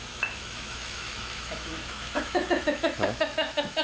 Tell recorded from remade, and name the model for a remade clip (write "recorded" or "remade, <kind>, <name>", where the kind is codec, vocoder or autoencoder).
remade, autoencoder, DAC-VAE